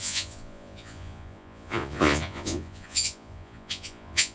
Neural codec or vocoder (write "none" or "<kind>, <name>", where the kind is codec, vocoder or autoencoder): vocoder, Vocos